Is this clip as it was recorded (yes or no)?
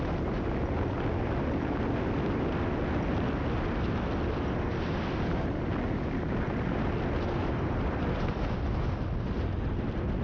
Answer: yes